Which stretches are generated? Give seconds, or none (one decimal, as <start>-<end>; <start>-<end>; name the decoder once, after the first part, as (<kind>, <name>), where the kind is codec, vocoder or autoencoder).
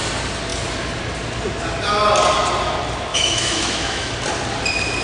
3.1-4.1 (autoencoder, DAC-VAE)